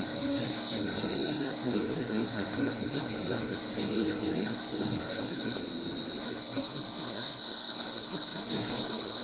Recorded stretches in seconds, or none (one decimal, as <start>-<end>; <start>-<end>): 5.6-6.2

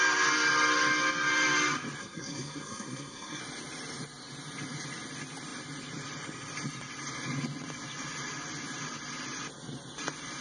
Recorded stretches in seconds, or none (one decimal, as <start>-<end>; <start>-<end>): 0.0-2.0; 3.4-10.4

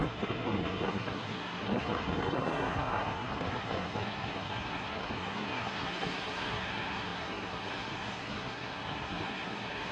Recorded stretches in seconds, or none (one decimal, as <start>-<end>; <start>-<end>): none